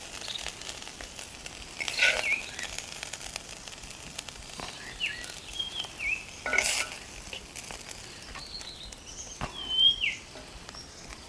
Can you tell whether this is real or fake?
real